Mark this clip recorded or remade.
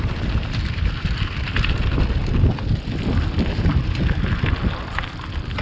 recorded